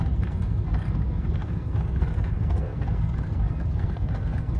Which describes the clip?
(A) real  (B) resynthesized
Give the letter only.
B